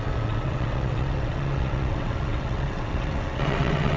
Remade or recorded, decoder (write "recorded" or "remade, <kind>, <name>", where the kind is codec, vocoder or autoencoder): remade, vocoder, WaveNeXt